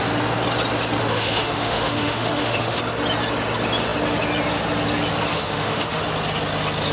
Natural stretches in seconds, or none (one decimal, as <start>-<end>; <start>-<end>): 0.0-1.0; 2.8-5.3; 6.0-6.9